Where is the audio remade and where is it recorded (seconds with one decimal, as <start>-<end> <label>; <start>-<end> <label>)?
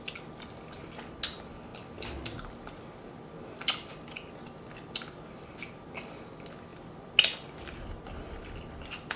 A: 0.0-9.2 recorded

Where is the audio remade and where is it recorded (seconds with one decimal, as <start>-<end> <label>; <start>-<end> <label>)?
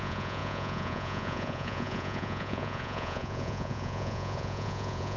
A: 0.0-5.2 remade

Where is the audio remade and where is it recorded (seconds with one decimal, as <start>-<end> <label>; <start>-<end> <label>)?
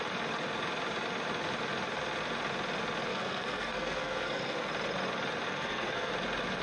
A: 0.0-3.1 recorded; 3.1-4.7 remade; 4.7-5.5 recorded; 5.5-6.1 remade; 6.1-6.6 recorded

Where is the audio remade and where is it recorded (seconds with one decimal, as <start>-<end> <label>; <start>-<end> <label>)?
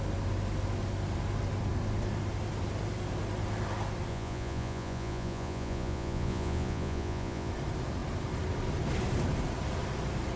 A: 0.0-4.1 recorded; 4.1-7.5 remade; 7.5-10.4 recorded